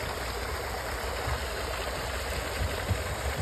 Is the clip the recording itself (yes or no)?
yes